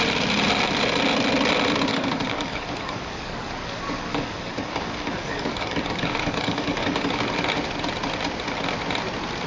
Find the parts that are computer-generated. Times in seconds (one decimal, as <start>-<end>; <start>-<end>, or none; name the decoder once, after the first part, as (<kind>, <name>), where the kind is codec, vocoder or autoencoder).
1.9-7.2 (codec, DAC)